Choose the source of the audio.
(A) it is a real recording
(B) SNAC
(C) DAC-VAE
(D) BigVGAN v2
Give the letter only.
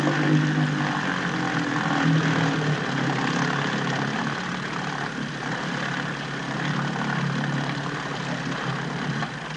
A